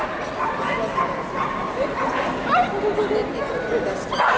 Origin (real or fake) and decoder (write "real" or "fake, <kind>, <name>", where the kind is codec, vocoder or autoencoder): real